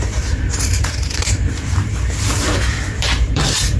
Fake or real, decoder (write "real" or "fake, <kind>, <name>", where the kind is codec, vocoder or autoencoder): fake, vocoder, BigVGAN v2